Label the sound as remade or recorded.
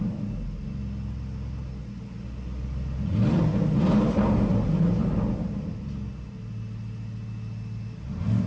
recorded